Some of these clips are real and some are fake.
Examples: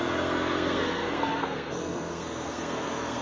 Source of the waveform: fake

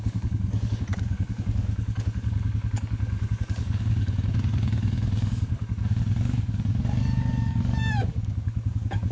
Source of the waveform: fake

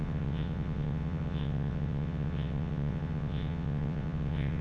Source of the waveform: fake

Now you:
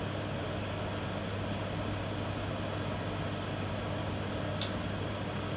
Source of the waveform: real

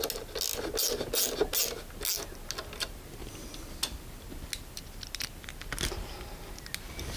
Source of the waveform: real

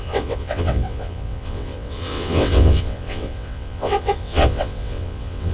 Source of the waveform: fake